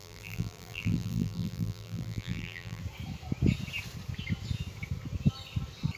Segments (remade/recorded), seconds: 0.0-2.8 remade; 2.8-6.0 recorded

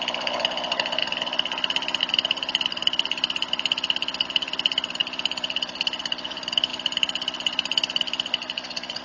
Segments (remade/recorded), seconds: 0.0-2.8 recorded; 2.8-4.5 remade; 4.5-5.0 recorded; 5.0-5.8 remade; 5.8-6.7 recorded; 6.7-9.0 remade

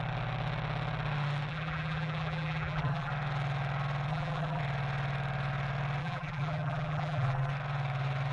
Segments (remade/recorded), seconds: 0.0-1.5 recorded; 1.5-3.1 remade; 3.1-4.1 recorded; 4.1-4.6 remade; 4.6-6.0 recorded; 6.0-7.5 remade; 7.5-8.3 recorded

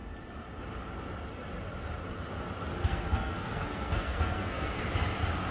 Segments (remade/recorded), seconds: 0.0-2.8 recorded; 2.8-4.8 remade; 4.8-5.5 recorded